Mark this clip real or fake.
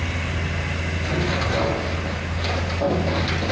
real